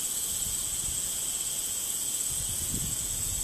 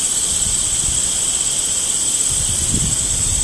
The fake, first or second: first